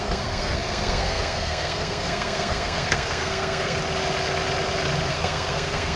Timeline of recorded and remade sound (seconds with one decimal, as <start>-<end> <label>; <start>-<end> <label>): 0.0-3.8 remade; 3.8-5.1 recorded; 5.1-6.0 remade